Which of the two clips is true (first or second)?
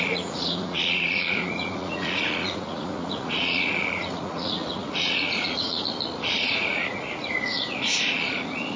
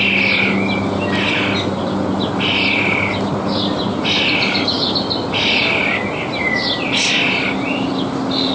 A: second